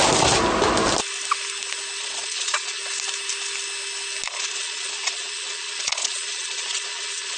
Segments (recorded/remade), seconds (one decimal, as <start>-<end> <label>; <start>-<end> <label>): 0.0-2.0 recorded; 2.0-2.8 remade; 2.8-4.3 recorded; 4.3-7.4 remade